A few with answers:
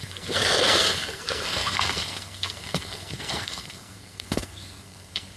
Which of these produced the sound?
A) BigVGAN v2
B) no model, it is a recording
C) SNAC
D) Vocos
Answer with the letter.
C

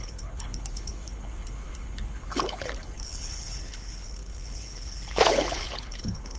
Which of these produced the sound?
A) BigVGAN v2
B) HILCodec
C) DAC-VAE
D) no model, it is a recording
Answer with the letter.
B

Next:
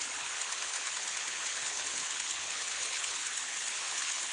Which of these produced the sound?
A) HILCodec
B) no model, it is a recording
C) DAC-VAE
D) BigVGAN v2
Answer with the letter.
A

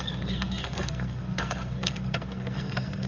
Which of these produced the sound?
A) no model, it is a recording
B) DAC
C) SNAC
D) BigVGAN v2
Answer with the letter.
C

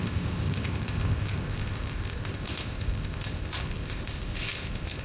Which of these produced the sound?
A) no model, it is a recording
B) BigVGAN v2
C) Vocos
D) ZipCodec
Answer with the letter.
D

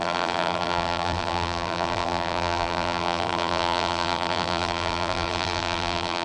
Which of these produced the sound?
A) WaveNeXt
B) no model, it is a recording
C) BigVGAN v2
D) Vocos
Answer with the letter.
C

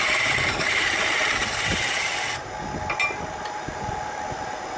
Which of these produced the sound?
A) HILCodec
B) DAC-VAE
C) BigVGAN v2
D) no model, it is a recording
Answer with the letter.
D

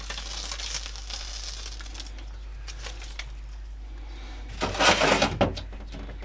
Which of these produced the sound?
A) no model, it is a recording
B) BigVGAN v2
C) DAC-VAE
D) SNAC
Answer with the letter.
A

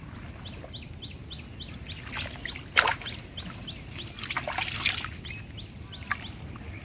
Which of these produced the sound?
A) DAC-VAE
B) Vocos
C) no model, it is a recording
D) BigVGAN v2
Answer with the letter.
C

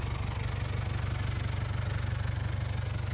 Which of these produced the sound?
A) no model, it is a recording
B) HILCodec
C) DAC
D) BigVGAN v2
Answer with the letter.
A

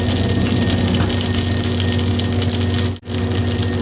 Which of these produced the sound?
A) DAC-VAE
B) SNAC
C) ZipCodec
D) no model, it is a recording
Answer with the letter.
D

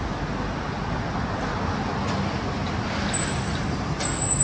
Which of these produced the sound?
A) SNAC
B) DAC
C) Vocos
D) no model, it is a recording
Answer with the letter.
D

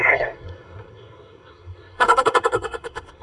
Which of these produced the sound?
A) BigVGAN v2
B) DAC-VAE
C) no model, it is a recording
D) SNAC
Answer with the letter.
D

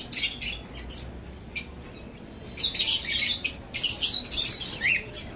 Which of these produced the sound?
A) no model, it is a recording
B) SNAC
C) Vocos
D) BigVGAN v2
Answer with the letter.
A